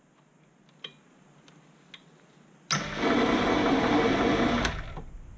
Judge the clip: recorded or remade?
recorded